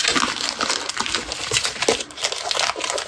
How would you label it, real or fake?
real